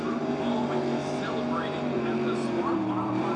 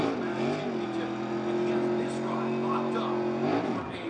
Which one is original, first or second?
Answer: second